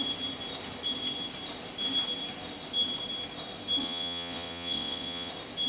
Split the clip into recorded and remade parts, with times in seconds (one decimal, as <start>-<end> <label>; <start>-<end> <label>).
0.0-3.8 recorded; 3.8-5.3 remade; 5.3-5.7 recorded